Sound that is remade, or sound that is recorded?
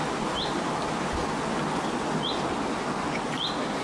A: recorded